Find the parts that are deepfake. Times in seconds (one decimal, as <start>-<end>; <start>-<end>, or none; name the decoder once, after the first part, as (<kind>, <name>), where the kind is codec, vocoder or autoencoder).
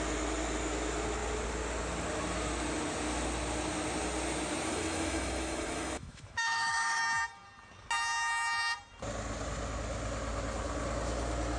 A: 4.7-7.0 (autoencoder, DAC-VAE)